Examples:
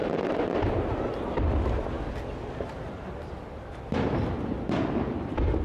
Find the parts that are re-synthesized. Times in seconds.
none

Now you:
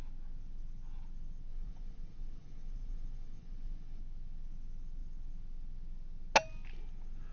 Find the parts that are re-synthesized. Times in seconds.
1.5-4.0 (vocoder, Vocos)